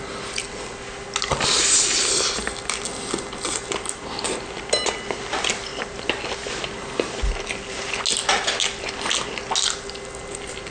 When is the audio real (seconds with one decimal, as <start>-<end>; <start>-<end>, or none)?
0.0-5.7; 6.5-10.7